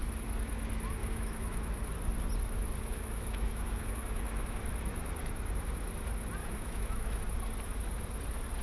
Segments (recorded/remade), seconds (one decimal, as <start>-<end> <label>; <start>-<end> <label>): 0.0-1.0 recorded; 1.0-1.9 remade; 1.9-2.8 recorded; 2.8-4.6 remade; 4.6-6.4 recorded; 6.4-7.2 remade; 7.2-8.6 recorded